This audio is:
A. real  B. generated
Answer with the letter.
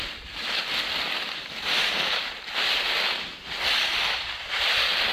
A